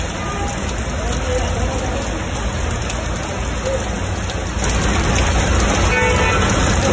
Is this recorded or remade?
recorded